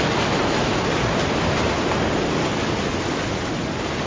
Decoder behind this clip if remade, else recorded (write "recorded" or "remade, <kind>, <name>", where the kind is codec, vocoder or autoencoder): recorded